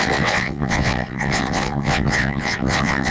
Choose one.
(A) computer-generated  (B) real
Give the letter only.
A